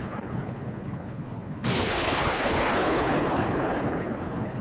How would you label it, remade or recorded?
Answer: remade